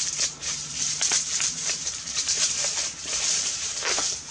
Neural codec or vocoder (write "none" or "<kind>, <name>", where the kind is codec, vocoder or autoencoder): vocoder, BigVGAN v2